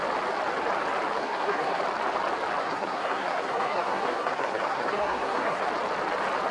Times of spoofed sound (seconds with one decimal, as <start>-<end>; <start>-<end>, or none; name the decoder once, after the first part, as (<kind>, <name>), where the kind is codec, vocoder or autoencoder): 1.2-1.8 (codec, SNAC); 2.6-5.6

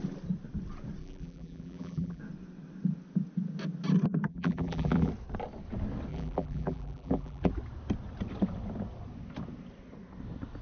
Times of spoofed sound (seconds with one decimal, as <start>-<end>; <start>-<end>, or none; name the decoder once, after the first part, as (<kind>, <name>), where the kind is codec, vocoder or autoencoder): 1.0-2.2 (vocoder, BigVGAN v2); 4.3-5.1; 6.1-7.5

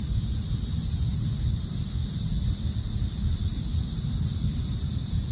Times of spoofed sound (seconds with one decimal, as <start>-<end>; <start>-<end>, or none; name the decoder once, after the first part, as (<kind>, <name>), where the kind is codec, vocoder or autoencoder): none

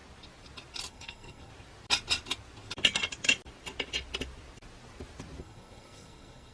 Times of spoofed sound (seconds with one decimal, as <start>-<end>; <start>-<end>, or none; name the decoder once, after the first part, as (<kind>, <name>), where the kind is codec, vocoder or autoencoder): 0.9-1.5 (codec, SNAC); 5.4-6.5

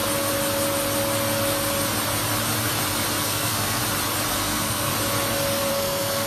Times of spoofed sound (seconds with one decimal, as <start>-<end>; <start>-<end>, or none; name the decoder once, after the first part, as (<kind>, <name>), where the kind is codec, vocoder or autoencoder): 3.2-3.8 (codec, SNAC); 4.3-4.9; 5.7-6.3

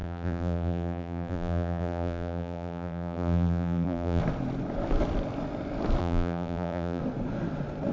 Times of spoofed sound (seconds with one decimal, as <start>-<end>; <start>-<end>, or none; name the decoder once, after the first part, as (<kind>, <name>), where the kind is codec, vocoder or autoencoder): 0.0-4.2 (vocoder, BigVGAN v2); 6.0-7.0